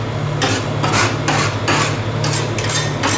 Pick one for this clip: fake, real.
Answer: real